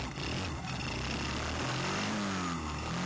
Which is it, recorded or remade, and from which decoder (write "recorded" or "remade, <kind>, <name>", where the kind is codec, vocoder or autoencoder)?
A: recorded